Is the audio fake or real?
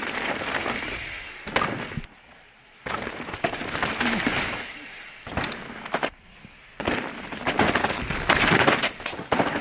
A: real